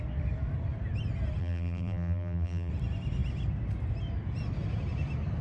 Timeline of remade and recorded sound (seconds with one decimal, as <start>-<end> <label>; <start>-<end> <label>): 0.0-1.4 recorded; 1.4-2.7 remade; 2.7-5.4 recorded